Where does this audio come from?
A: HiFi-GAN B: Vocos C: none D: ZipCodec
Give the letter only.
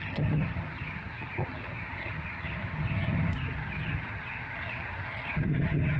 A